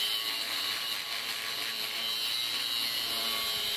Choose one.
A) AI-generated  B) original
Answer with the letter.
B